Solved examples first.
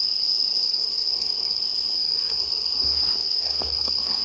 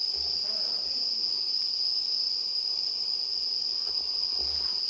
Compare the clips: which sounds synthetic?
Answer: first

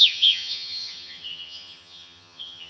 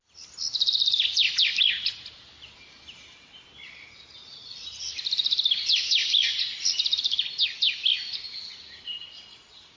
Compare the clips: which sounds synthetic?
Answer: first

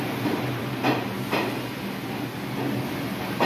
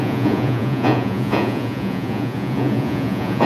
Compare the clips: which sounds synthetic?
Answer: second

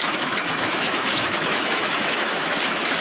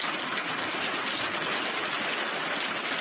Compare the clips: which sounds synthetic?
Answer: first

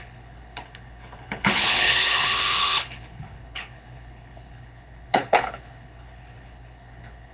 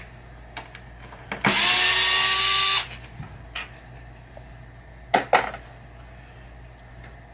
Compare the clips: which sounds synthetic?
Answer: first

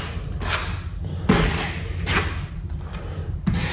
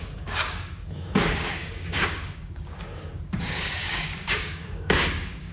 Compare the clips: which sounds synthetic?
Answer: second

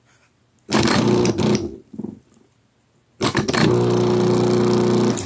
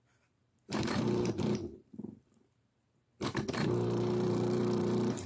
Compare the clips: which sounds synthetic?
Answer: second